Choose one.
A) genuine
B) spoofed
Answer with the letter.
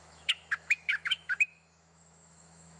B